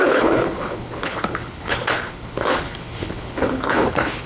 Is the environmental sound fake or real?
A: fake